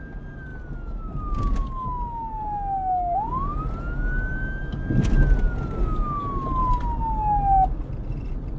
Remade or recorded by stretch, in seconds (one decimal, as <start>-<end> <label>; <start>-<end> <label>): 0.0-8.6 recorded